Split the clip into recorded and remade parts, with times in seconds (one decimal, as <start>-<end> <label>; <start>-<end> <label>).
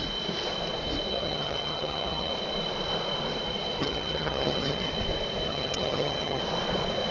0.0-1.1 recorded; 1.1-2.3 remade; 2.3-3.8 recorded; 3.8-4.9 remade; 4.9-5.5 recorded; 5.5-6.4 remade; 6.4-7.1 recorded